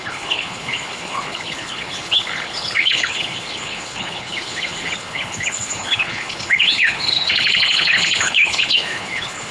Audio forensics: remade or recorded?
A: remade